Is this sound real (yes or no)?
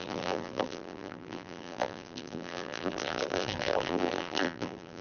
no